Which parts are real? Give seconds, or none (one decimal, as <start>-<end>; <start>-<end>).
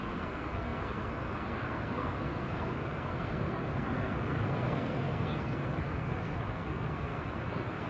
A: none